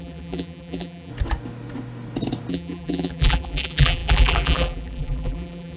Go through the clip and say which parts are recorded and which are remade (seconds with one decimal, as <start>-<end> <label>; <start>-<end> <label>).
0.0-1.1 remade; 1.1-2.5 recorded; 2.5-5.8 remade